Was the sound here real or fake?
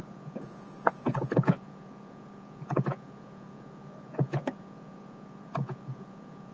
fake